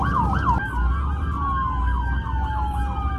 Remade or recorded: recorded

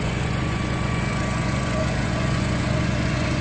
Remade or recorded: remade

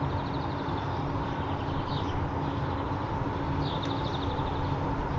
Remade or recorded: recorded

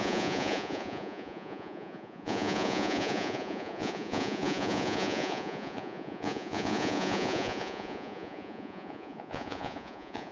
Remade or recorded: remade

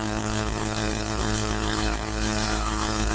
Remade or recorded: remade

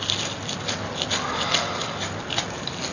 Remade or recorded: recorded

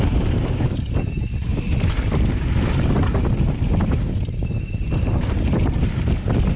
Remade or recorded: recorded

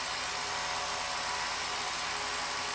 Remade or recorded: recorded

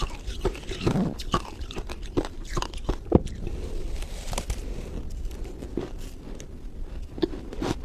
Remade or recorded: remade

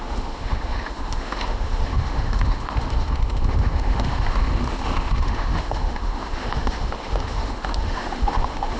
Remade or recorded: remade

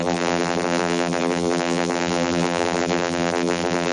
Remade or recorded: remade